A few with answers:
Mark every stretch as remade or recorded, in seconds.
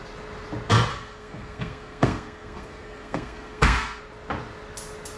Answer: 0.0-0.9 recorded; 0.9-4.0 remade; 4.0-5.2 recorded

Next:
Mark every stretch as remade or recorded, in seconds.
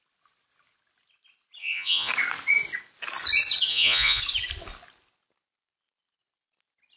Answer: 0.0-1.6 recorded; 1.6-2.1 remade; 2.1-3.7 recorded; 3.7-4.2 remade; 4.2-7.0 recorded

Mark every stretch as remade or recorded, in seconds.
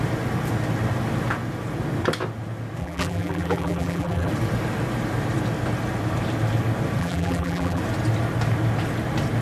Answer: 0.0-2.8 recorded; 2.8-4.3 remade; 4.3-7.0 recorded; 7.0-7.8 remade; 7.8-9.4 recorded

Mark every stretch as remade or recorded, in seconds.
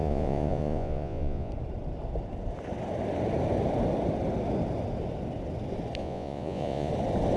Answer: 0.0-1.5 remade; 1.5-6.0 recorded; 6.0-6.9 remade; 6.9-7.4 recorded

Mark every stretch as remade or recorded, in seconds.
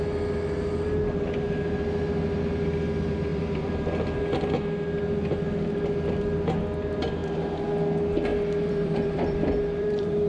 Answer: 0.0-3.3 recorded; 3.3-4.2 remade; 4.2-8.3 recorded; 8.3-10.3 remade